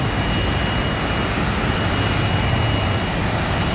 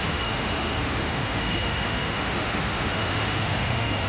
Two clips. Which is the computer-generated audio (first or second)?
second